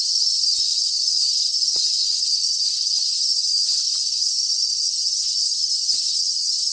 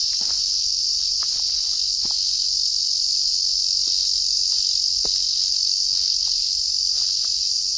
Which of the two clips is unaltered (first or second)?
second